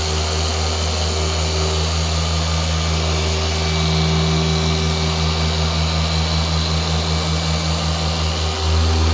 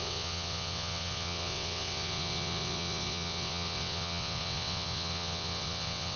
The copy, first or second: second